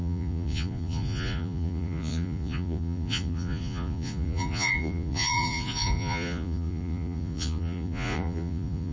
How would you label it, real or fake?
fake